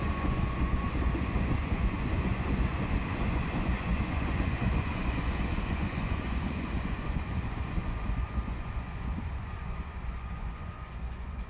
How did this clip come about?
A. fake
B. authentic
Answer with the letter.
A